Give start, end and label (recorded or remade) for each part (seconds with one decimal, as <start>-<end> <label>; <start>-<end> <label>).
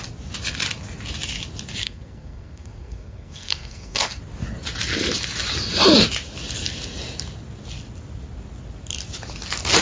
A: 0.0-1.8 recorded; 1.8-4.2 remade; 4.2-9.8 recorded